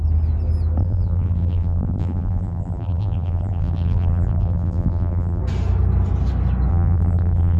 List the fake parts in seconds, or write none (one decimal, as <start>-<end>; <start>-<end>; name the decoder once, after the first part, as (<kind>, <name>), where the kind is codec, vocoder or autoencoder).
0.8-5.4 (vocoder, BigVGAN v2); 6.7-7.6